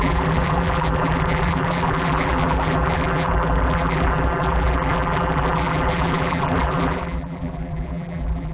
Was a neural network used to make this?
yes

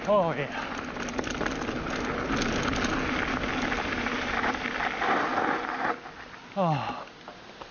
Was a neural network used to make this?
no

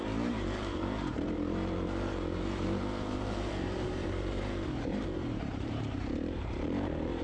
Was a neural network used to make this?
yes